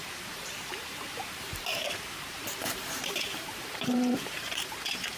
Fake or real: fake